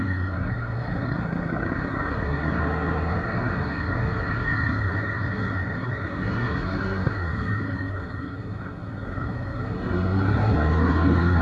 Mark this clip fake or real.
fake